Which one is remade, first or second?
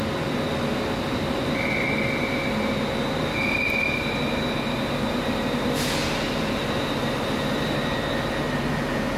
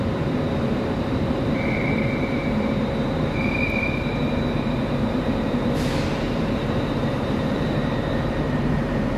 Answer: second